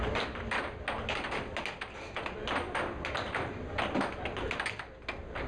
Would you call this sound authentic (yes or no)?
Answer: yes